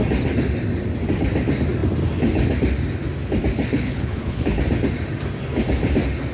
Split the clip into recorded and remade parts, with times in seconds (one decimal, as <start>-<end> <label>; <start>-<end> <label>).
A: 0.0-3.7 recorded; 3.7-4.6 remade; 4.6-6.3 recorded